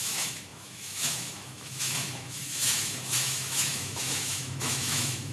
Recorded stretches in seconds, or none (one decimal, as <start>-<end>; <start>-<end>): none